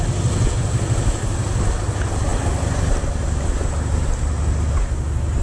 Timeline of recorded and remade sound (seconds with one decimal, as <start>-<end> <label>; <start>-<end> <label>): 0.0-5.4 recorded